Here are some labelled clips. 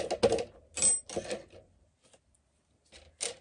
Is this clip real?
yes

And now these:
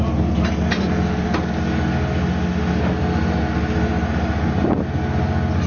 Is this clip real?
yes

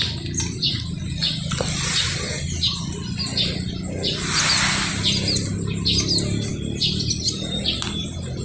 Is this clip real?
yes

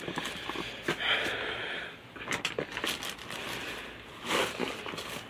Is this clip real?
yes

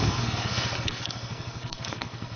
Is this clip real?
no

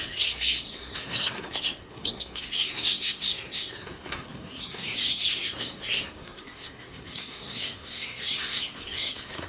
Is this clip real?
no